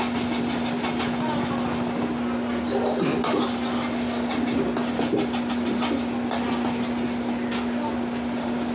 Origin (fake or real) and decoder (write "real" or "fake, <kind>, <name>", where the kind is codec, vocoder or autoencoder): real